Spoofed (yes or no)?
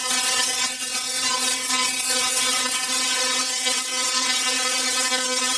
yes